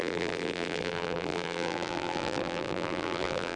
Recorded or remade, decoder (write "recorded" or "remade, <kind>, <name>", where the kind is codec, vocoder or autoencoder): remade, vocoder, BigVGAN v2